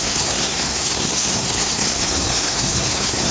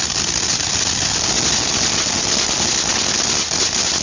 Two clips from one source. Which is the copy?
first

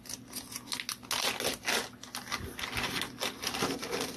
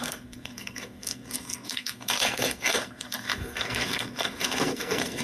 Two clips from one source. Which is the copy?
second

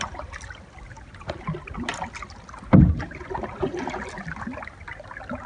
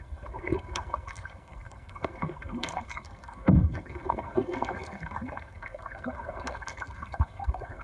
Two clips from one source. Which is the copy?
second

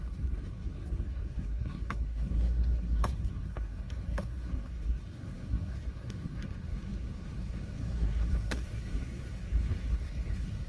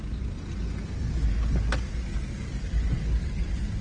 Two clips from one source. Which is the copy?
first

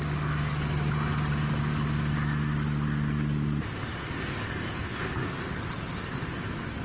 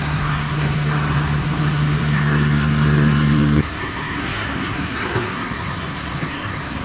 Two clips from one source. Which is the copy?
second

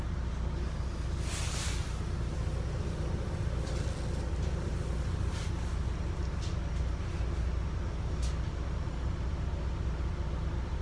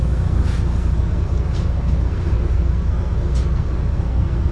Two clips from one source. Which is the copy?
second